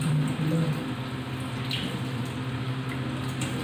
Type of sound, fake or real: real